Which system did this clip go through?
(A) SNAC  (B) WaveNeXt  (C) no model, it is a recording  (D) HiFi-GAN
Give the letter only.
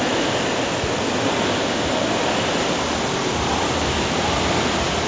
C